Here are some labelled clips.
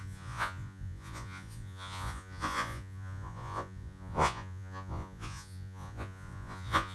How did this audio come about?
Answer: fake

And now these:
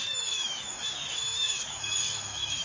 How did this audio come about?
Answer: fake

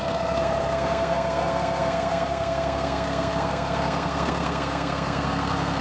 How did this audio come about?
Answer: fake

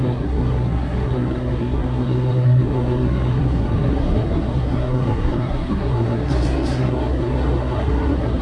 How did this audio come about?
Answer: fake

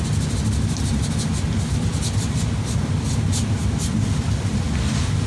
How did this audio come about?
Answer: real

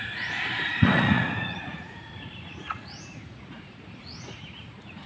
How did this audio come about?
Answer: fake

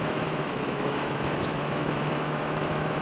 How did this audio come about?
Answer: fake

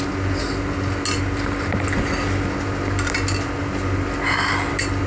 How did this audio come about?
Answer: real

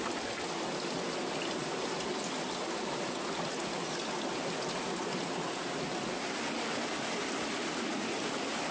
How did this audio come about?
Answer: real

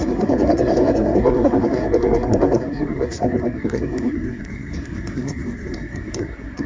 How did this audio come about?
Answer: fake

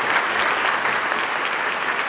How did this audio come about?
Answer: real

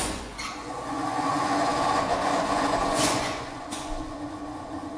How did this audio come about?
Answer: fake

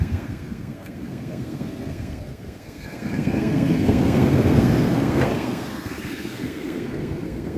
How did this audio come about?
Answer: fake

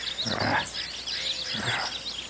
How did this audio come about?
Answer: real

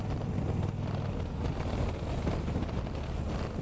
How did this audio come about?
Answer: real